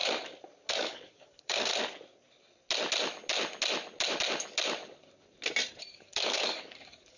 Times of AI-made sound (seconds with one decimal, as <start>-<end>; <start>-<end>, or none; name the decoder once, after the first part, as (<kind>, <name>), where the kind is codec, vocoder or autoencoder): 0.7-1.7 (codec, DAC); 5.9-7.2